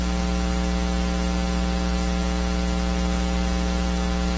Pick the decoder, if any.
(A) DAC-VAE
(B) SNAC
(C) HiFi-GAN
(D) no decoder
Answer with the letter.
D